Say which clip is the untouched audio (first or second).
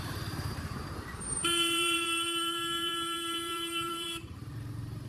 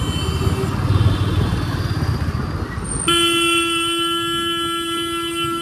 second